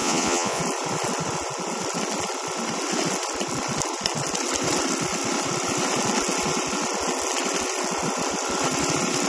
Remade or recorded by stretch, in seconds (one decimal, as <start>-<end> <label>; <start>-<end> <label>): 0.0-0.6 remade; 0.6-9.3 recorded